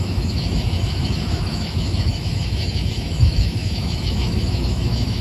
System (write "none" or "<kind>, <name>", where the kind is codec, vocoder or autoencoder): autoencoder, DAC-VAE